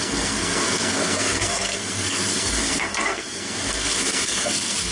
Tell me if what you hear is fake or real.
fake